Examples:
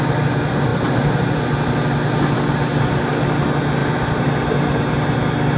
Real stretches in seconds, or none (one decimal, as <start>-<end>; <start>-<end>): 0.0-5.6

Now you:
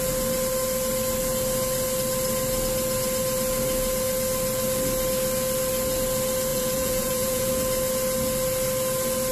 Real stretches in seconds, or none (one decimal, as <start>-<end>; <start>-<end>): 0.0-6.5; 7.5-9.3

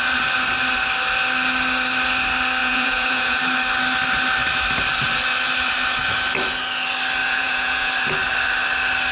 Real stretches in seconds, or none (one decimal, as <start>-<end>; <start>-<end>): 0.0-2.6; 3.4-7.2; 7.9-9.1

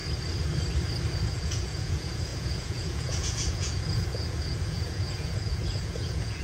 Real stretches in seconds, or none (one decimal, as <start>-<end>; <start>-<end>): 0.0-1.3